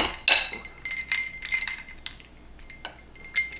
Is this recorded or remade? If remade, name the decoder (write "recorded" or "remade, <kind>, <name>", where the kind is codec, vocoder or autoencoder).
recorded